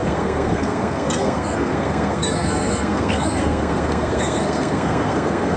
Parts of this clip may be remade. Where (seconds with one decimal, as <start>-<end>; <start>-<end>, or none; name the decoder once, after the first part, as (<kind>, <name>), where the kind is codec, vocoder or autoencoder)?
0.0-5.6 (codec, SNAC)